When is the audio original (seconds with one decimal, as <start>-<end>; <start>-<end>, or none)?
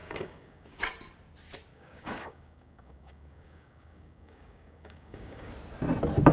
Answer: 0.8-1.7; 5.5-6.3